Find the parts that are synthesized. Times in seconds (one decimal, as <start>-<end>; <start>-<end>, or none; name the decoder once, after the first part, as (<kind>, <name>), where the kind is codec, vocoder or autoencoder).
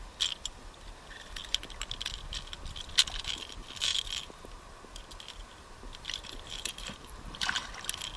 5.9-7.7 (vocoder, BigVGAN v2)